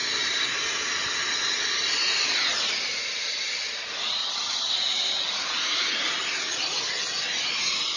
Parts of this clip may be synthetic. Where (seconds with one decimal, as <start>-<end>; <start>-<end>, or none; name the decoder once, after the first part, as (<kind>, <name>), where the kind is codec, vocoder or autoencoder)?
4.2-4.7 (vocoder, HiFi-GAN)